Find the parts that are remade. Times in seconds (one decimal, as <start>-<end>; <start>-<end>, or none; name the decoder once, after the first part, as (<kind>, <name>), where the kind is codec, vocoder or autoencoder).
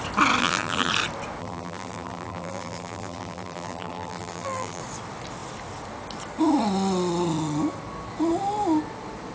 0.4-0.9 (vocoder, BigVGAN v2); 1.4-4.8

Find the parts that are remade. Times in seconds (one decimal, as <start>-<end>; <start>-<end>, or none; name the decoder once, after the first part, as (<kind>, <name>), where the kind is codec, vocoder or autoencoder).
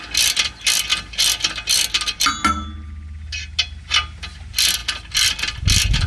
none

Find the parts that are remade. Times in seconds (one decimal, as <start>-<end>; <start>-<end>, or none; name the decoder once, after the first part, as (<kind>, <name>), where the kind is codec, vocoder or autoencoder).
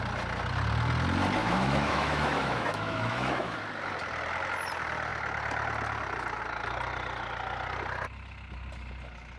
1.4-3.6 (autoencoder, DAC-VAE)